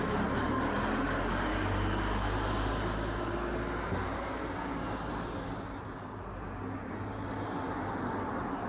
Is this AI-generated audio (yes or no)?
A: no